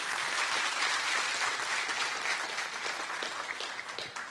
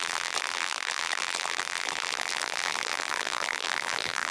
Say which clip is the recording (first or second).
first